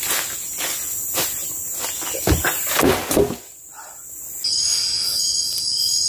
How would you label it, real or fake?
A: real